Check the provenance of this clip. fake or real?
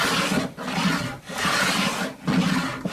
real